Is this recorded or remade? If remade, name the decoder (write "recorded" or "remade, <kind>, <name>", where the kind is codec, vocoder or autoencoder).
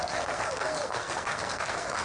remade, codec, SNAC